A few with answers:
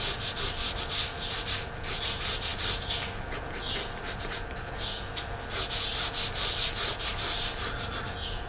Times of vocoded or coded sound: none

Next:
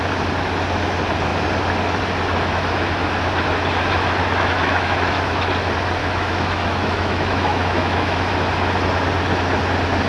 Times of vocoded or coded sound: 4.2-5.5 (autoencoder, DAC-VAE); 6.0-8.3

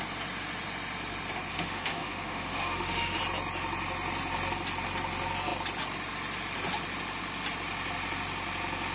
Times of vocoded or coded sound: 1.5-3.2 (autoencoder, DAC-VAE)

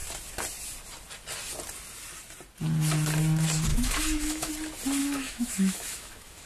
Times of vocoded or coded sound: 3.7-4.5 (autoencoder, DAC-VAE); 5.0-6.5

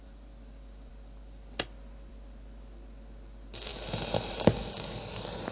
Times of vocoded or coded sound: none

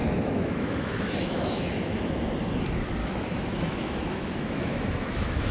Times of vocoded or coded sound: 0.0-2.1 (autoencoder, DAC-VAE); 3.0-5.5